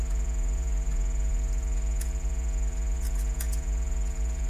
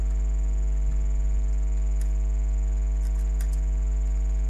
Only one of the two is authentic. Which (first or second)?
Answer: second